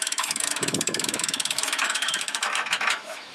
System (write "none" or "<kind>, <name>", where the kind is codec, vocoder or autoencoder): autoencoder, DAC-VAE